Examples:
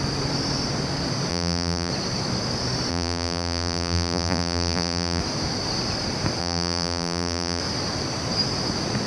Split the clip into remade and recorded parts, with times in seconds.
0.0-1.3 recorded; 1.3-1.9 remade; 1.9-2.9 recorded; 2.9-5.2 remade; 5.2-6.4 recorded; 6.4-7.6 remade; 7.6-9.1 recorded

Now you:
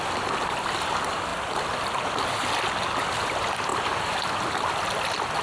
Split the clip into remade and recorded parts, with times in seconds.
0.0-3.7 recorded; 3.7-4.6 remade; 4.6-5.4 recorded

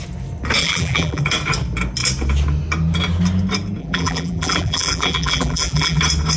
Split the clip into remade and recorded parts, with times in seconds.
0.0-0.6 recorded; 0.6-1.2 remade; 1.2-3.8 recorded; 3.8-6.0 remade; 6.0-6.4 recorded

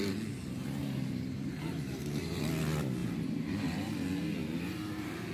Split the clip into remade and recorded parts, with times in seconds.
0.0-0.8 recorded; 0.8-2.4 remade; 2.4-3.0 recorded; 3.0-3.9 remade; 3.9-4.4 recorded; 4.4-5.3 remade

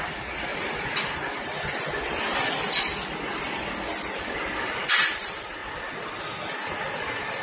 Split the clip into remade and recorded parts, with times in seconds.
0.0-0.5 remade; 0.5-4.3 recorded; 4.3-7.4 remade

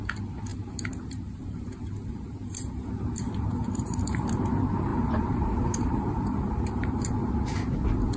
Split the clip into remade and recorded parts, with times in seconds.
0.0-0.5 recorded; 0.5-4.2 remade; 4.2-4.9 recorded; 4.9-7.3 remade; 7.3-8.2 recorded

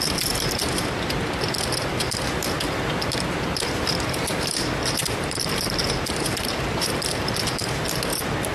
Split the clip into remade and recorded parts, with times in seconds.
0.0-1.9 recorded; 1.9-3.1 remade; 3.1-5.0 recorded; 5.0-7.7 remade; 7.7-8.5 recorded